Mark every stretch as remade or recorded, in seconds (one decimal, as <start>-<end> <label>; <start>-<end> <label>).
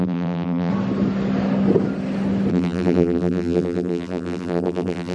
0.0-0.7 remade; 0.7-2.5 recorded; 2.5-5.1 remade